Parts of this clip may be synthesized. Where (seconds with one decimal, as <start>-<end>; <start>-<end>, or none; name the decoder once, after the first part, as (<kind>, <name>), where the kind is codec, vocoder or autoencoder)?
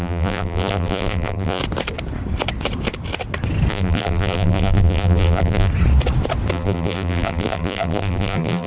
0.0-1.6 (vocoder, BigVGAN v2); 3.7-5.7; 6.5-8.7